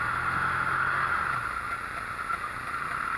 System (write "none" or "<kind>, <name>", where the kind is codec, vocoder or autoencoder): none